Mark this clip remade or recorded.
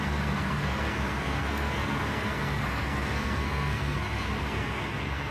remade